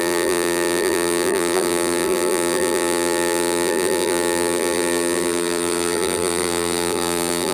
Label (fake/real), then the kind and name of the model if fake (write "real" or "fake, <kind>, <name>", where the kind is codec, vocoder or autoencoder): fake, vocoder, BigVGAN v2